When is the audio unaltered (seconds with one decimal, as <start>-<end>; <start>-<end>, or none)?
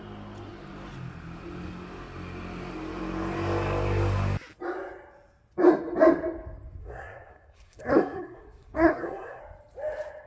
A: 0.0-6.8; 9.4-10.3